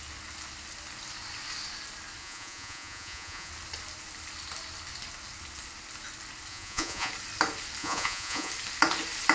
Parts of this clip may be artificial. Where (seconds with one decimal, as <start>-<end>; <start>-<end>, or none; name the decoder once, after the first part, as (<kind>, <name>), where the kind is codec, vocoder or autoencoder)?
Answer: 2.2-3.5 (vocoder, Vocos); 6.5-7.1; 7.8-8.5